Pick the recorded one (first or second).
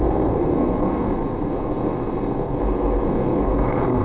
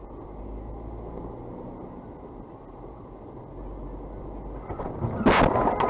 second